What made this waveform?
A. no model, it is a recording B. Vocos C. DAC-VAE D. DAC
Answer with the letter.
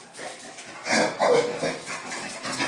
A